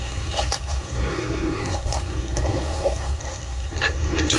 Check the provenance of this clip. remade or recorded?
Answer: remade